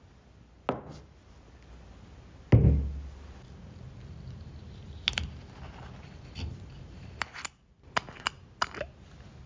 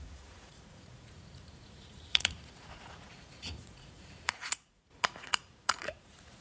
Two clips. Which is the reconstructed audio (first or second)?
second